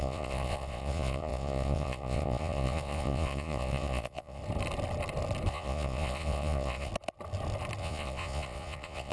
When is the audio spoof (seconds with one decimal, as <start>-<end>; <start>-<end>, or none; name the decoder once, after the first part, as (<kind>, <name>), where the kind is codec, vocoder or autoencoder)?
0.0-4.4 (vocoder, Vocos); 5.5-6.9; 7.8-9.1